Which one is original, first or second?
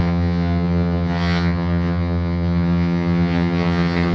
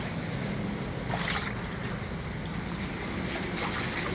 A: second